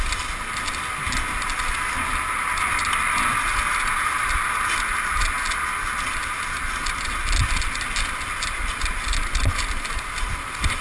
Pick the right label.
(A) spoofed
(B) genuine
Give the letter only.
B